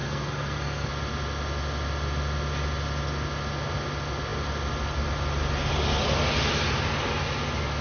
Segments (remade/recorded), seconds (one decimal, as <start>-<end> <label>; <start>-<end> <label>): 0.0-0.9 remade; 0.9-7.8 recorded